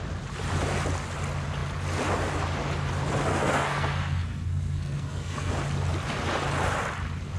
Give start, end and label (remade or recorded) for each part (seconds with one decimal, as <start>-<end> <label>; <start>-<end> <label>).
0.0-3.3 recorded; 3.3-5.5 remade; 5.5-7.4 recorded

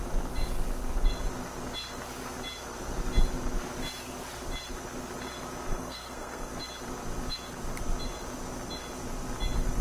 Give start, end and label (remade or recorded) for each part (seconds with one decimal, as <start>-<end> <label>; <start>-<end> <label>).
0.0-5.7 recorded; 5.7-6.5 remade; 6.5-9.8 recorded

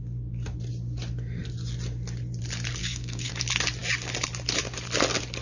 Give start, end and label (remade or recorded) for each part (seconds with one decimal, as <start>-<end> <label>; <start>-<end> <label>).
0.0-2.8 recorded; 2.8-3.3 remade; 3.3-5.4 recorded

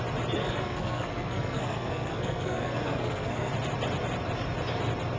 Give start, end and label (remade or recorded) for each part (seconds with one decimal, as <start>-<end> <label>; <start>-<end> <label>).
0.0-0.4 recorded; 0.4-3.5 remade; 3.5-5.2 recorded

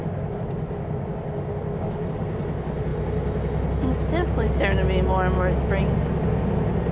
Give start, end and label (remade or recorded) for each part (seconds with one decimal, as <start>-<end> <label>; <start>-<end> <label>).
0.0-6.9 recorded